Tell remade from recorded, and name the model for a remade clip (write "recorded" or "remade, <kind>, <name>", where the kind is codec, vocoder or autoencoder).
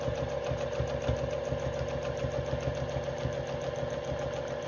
recorded